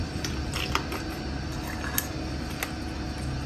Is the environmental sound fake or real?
real